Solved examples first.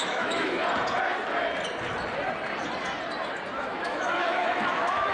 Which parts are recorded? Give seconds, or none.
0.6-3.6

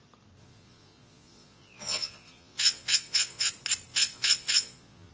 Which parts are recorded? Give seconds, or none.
0.0-0.4; 3.5-3.9

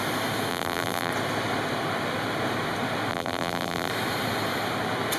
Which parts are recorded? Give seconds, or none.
0.0-0.5; 1.1-3.1; 3.9-5.2

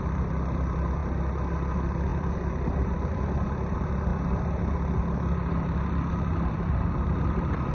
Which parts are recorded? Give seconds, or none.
1.0-1.7; 4.1-5.5

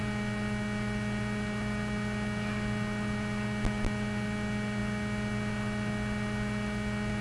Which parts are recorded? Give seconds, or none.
0.0-7.2

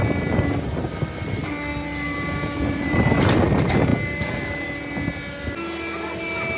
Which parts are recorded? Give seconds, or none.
0.0-6.6